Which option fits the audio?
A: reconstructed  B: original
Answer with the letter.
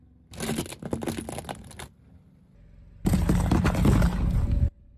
B